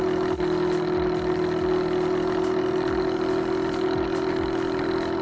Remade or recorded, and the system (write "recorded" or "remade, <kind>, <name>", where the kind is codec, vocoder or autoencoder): recorded